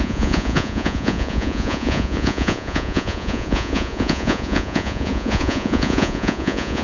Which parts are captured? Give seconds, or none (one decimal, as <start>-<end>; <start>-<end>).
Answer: none